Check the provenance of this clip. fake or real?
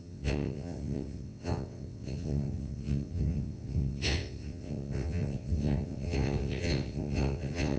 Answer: fake